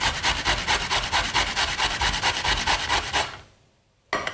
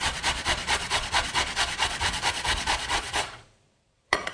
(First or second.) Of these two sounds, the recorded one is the first